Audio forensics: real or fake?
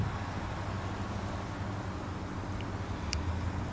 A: real